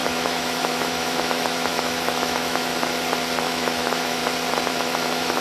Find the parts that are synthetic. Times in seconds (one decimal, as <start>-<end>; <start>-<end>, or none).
0.0-2.7; 3.4-4.2; 4.7-5.4